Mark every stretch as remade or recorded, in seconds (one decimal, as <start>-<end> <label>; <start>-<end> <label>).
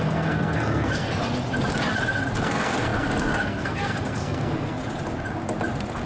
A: 0.0-1.2 remade; 1.2-2.4 recorded; 2.4-4.8 remade; 4.8-6.1 recorded